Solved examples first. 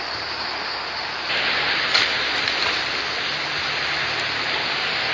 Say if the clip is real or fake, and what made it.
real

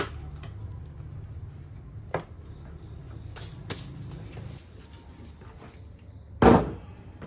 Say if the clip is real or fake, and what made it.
real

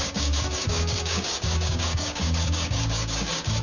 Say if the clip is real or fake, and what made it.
fake, codec, DAC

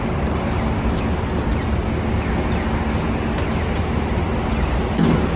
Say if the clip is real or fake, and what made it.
real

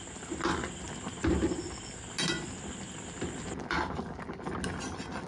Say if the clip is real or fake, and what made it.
real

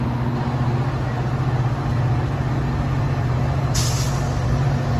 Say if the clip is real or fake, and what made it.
real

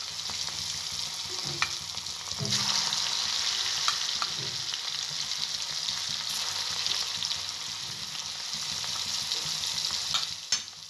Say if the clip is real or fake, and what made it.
real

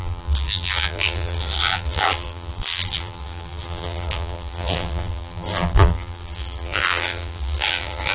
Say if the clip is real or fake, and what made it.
fake, vocoder, BigVGAN v2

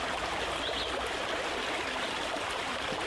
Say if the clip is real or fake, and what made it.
real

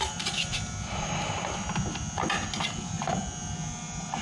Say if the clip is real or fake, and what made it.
real